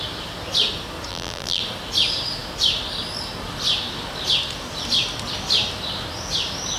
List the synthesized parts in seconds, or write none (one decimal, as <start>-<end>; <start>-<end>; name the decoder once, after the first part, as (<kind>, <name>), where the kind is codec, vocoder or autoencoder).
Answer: 1.1-1.6 (vocoder, BigVGAN v2)